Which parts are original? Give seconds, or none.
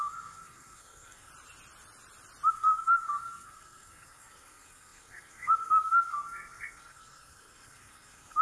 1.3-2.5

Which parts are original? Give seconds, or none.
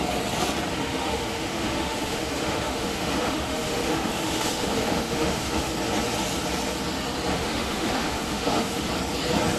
0.0-0.7; 5.7-7.3; 8.9-9.6